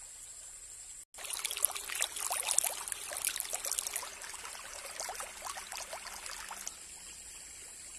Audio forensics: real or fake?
real